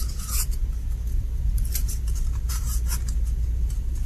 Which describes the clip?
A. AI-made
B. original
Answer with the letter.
B